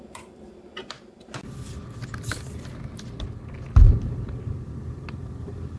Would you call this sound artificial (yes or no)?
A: no